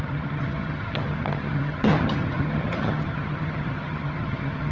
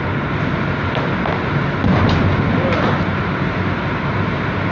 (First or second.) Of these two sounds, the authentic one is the second